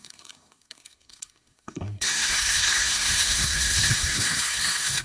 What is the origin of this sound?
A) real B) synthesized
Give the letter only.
B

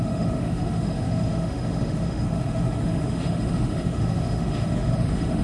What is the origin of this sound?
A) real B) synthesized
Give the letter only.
B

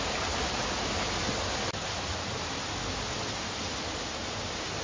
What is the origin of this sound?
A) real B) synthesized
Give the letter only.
A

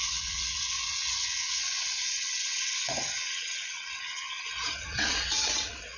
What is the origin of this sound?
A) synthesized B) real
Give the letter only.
A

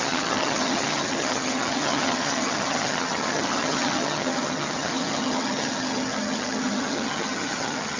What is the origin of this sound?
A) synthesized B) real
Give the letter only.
A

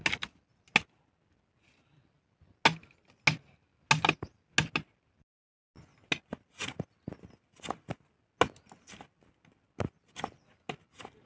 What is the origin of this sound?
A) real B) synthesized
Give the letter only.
A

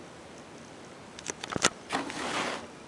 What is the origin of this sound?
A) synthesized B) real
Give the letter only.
B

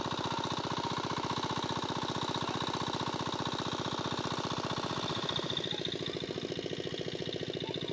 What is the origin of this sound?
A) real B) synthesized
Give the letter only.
A